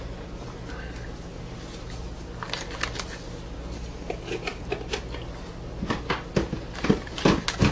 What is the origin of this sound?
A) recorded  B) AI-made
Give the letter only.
A